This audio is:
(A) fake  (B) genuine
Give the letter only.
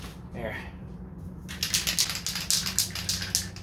B